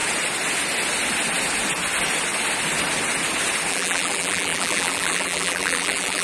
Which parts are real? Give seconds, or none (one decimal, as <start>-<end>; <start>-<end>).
0.0-3.7